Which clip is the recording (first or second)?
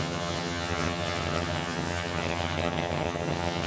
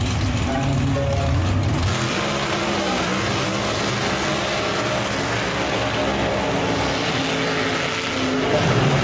second